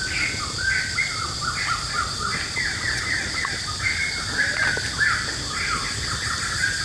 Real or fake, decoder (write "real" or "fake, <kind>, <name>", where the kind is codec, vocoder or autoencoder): real